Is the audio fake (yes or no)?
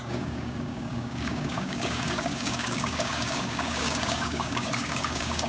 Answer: yes